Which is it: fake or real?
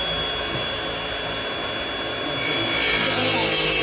real